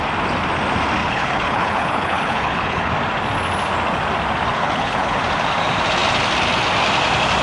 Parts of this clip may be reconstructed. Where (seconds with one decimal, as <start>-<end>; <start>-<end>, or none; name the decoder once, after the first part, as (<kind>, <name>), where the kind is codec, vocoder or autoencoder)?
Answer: 1.0-2.9 (codec, HILCodec); 4.5-5.2